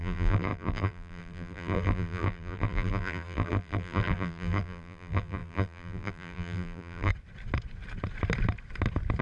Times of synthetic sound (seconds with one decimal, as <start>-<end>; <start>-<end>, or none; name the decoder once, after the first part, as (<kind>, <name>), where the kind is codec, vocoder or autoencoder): 0.0-7.1 (vocoder, BigVGAN v2)